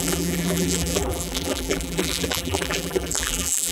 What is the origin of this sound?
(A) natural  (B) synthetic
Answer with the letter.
B